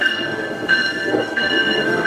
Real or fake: fake